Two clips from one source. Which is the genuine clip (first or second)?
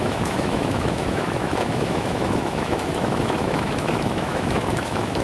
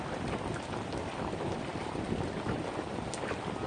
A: second